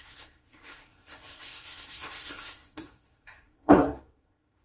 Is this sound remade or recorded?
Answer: remade